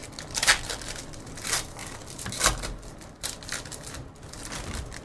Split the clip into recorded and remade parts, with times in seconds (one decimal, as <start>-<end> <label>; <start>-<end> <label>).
0.0-5.0 recorded